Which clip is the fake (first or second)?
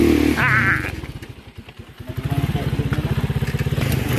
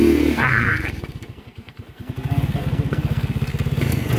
second